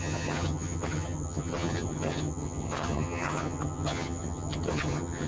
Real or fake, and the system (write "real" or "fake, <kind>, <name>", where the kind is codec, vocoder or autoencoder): fake, vocoder, HiFi-GAN